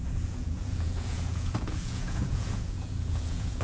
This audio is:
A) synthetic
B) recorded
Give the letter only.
A